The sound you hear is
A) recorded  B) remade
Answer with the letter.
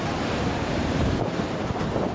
B